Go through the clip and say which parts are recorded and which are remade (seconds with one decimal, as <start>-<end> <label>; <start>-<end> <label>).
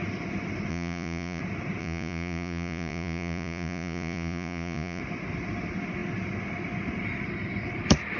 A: 0.0-0.7 recorded; 0.7-1.4 remade; 1.4-1.8 recorded; 1.8-5.0 remade; 5.0-8.2 recorded